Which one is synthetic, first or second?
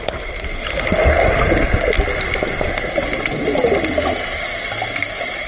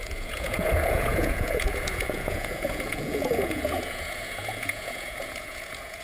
second